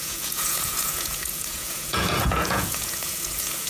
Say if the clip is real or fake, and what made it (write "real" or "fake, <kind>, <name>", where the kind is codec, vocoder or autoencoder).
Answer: fake, vocoder, Vocos